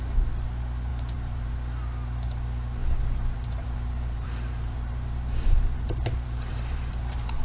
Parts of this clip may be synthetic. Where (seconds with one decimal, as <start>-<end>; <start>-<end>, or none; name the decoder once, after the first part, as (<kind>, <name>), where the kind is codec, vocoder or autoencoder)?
0.9-1.5 (vocoder, BigVGAN v2); 2.8-7.4